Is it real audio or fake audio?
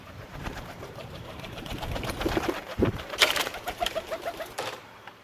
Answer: fake